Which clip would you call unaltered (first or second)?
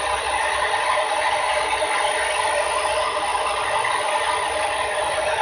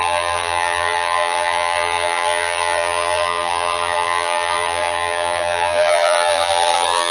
first